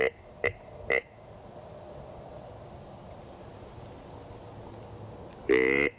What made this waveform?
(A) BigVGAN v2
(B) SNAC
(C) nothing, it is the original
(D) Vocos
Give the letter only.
C